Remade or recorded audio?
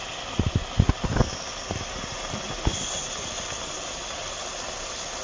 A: recorded